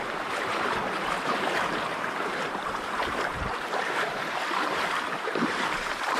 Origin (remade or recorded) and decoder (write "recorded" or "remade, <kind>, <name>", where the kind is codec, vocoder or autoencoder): remade, vocoder, BigVGAN v2